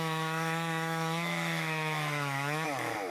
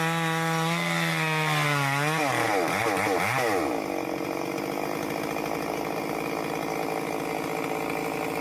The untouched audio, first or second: second